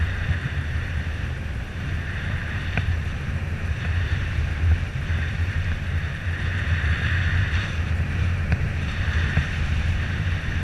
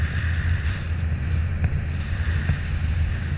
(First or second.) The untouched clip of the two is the second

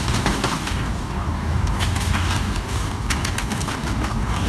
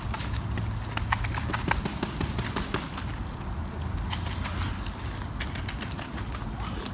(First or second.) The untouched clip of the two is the second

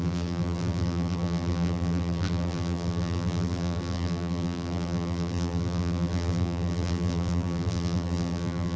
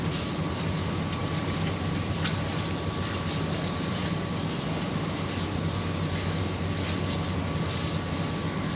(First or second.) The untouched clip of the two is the second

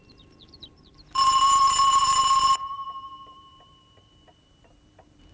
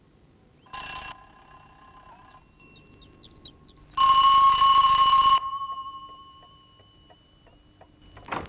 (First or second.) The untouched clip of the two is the second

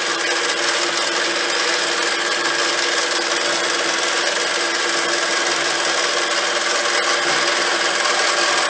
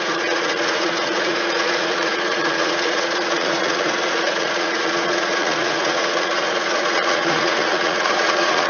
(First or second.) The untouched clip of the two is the first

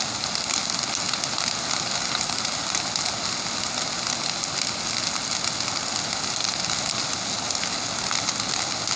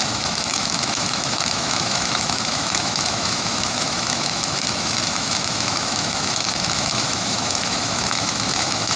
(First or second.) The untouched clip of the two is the first